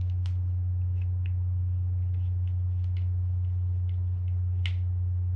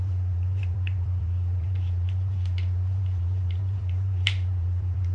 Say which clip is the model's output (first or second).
second